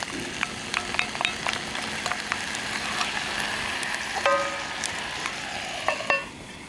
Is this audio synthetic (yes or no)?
no